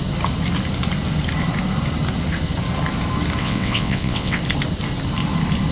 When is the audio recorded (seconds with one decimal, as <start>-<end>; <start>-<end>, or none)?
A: 0.0-3.4; 4.4-5.7